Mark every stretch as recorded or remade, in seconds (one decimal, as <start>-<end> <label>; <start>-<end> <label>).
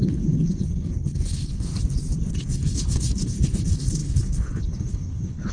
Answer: 0.0-1.7 remade; 1.7-2.3 recorded; 2.3-5.5 remade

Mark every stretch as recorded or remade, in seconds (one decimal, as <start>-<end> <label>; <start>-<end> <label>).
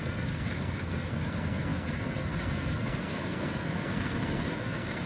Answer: 0.0-5.1 remade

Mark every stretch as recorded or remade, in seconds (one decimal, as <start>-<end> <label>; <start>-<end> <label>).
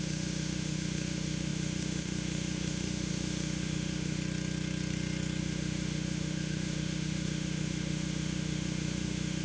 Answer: 0.0-4.2 remade; 4.2-5.4 recorded; 5.4-9.4 remade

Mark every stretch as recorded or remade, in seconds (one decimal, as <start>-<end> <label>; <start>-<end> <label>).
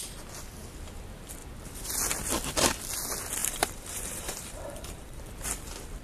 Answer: 0.0-3.4 recorded; 3.4-5.2 remade; 5.2-6.0 recorded